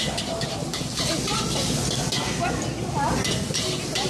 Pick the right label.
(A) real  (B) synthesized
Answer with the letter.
A